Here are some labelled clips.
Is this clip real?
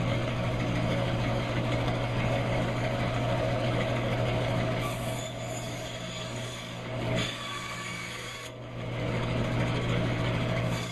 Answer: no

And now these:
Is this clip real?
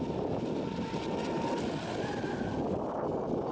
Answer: yes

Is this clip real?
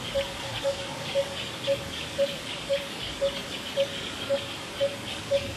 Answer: no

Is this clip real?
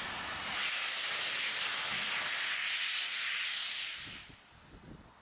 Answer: yes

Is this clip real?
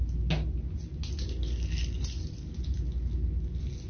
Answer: yes